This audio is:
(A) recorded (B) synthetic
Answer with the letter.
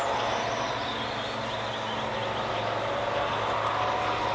A